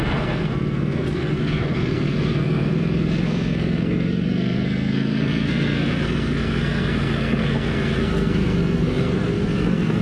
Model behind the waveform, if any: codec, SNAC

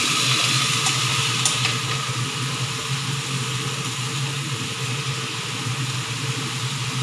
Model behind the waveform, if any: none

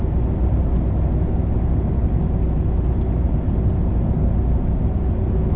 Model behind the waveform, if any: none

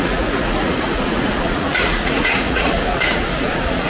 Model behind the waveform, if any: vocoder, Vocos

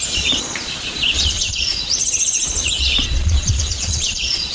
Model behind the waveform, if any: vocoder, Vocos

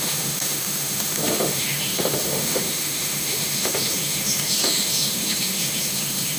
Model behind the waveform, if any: autoencoder, DAC-VAE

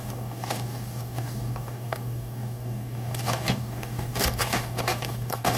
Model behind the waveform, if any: codec, DAC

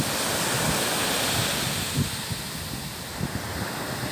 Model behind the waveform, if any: none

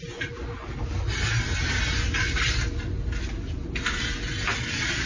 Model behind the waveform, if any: none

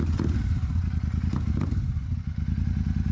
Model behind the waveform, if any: none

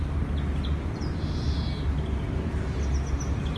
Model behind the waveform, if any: none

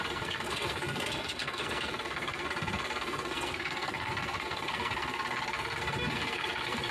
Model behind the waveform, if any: codec, SNAC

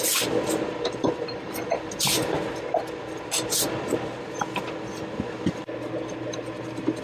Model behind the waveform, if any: none